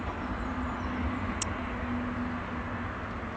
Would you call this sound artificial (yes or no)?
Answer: no